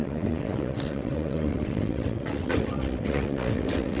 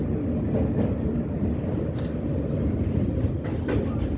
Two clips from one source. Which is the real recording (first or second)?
second